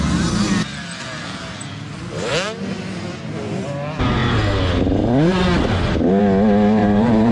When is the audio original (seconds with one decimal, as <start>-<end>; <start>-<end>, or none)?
0.0-6.8